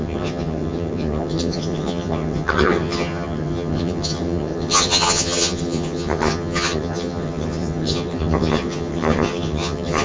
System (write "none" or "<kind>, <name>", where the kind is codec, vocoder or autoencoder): vocoder, HiFi-GAN